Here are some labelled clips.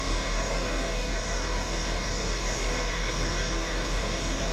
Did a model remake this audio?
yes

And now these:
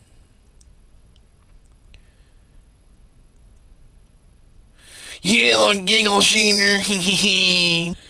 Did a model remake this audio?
yes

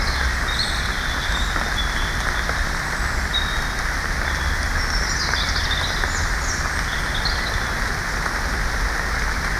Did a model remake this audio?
no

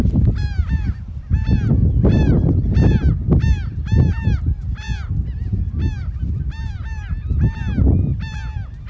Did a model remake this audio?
no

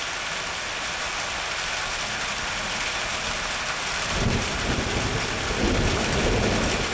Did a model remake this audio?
no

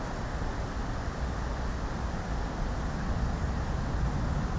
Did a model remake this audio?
no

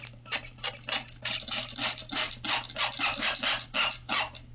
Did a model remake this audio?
no